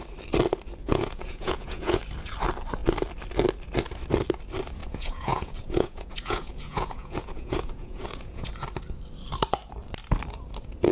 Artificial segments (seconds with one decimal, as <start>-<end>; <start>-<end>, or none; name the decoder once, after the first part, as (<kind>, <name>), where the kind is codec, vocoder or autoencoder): 0.8-2.0 (vocoder, Vocos); 4.8-8.5